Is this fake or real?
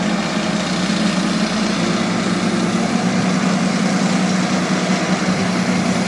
real